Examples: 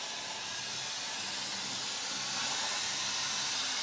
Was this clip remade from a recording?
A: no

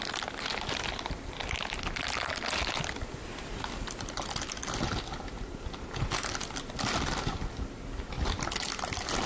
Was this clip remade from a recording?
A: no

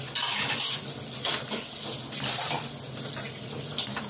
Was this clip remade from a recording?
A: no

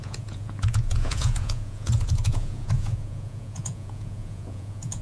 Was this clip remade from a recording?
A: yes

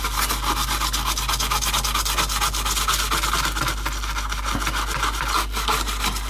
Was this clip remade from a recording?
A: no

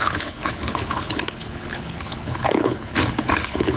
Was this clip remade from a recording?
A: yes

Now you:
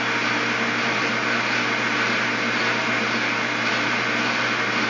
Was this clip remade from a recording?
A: no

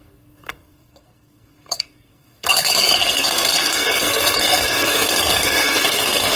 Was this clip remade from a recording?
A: yes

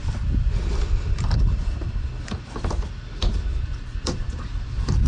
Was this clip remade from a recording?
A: yes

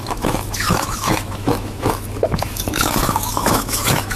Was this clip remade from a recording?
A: yes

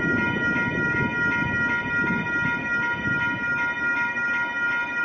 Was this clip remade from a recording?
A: no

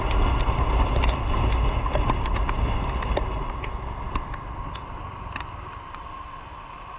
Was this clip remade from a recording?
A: no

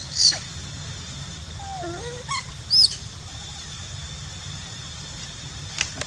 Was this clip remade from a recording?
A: no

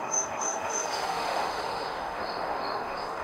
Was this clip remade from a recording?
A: yes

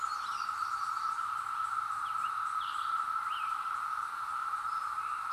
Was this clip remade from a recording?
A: yes